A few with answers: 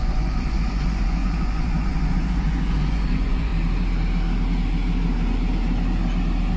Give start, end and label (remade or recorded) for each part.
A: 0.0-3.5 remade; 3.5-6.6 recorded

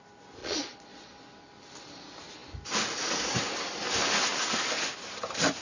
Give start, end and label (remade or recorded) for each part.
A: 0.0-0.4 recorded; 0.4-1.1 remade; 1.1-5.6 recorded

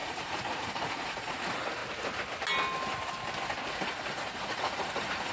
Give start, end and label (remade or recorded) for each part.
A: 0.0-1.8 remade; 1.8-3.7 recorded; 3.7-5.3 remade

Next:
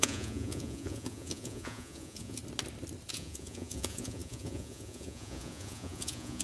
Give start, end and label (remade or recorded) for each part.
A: 0.0-2.4 remade; 2.4-3.1 recorded; 3.1-6.4 remade

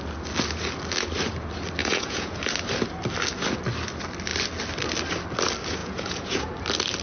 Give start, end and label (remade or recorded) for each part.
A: 0.0-1.8 recorded; 1.8-2.4 remade; 2.4-5.8 recorded; 5.8-6.5 remade; 6.5-7.0 recorded

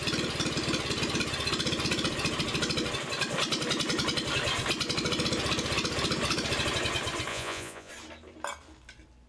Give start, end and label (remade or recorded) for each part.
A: 0.0-7.3 recorded; 7.3-7.9 remade; 7.9-9.3 recorded